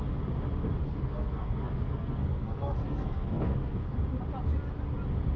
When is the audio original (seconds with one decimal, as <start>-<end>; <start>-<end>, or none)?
0.0-0.8; 4.0-5.4